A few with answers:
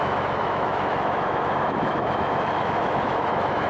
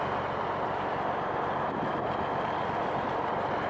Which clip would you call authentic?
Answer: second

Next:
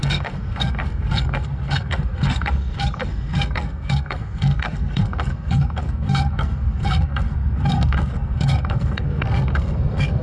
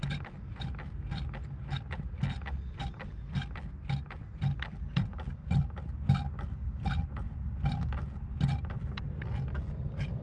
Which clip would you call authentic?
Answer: second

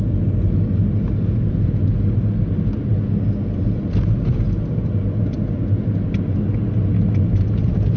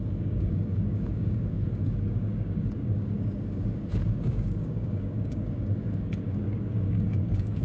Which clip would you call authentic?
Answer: first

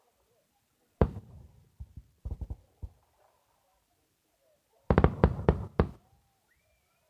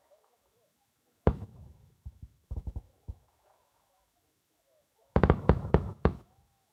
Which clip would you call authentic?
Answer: first